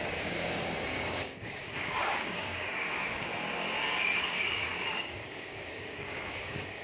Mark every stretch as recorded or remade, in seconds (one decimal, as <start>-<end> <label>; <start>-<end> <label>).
0.0-3.3 remade; 3.3-4.2 recorded; 4.2-6.8 remade